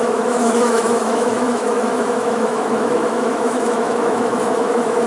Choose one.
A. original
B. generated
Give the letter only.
B